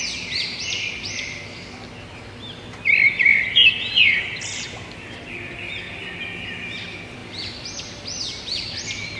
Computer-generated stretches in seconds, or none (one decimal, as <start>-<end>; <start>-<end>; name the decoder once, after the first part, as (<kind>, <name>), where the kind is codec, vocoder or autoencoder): 3.3-4.2 (vocoder, BigVGAN v2)